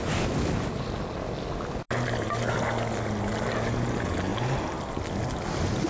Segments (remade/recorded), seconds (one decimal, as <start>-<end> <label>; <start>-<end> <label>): 0.0-5.9 recorded